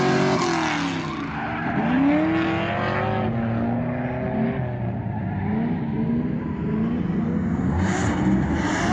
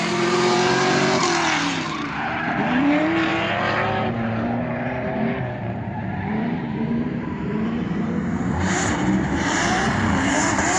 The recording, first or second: first